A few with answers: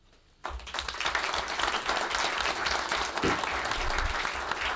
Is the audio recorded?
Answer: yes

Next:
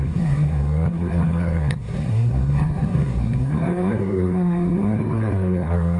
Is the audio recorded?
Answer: no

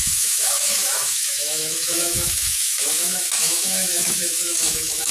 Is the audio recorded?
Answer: no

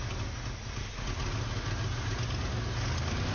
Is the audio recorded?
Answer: yes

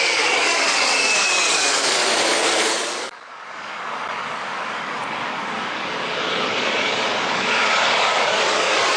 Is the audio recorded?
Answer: no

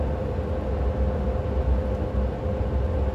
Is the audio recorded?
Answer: yes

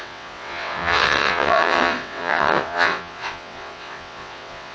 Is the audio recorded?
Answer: no